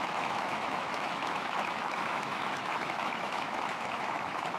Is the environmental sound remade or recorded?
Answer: remade